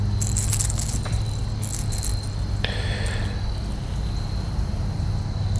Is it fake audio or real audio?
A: real